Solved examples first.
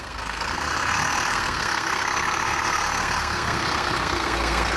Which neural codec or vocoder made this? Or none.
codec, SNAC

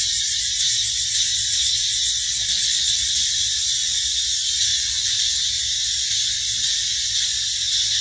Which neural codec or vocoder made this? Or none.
vocoder, BigVGAN v2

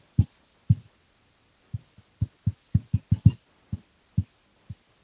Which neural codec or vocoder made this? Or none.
none